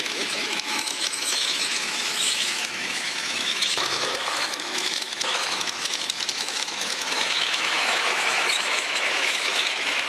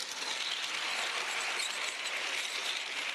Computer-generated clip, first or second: first